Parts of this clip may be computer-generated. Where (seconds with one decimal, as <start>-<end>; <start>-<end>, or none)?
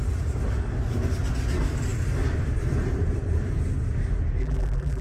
4.4-5.0